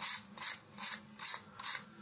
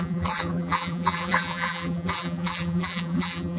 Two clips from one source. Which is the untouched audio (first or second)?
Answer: first